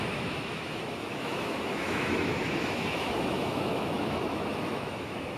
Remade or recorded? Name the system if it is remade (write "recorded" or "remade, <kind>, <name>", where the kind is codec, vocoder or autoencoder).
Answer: remade, autoencoder, DAC-VAE